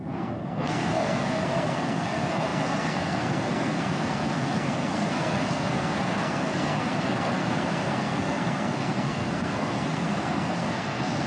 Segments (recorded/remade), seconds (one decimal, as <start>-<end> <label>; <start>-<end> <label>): 0.0-11.3 remade